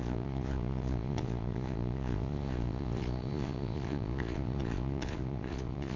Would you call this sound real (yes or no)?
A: no